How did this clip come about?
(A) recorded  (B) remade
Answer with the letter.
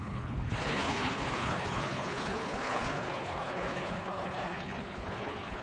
B